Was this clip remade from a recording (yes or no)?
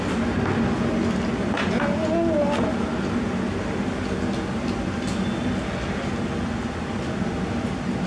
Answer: no